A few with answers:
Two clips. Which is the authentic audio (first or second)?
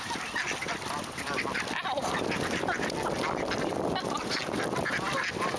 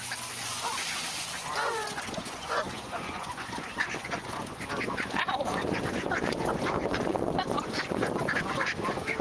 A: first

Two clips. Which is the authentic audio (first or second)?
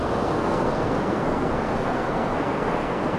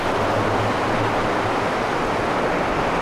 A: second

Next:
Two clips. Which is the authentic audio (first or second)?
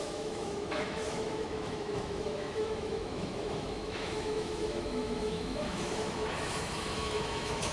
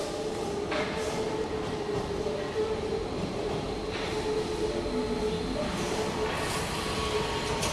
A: second